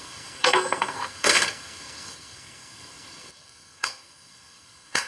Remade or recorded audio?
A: remade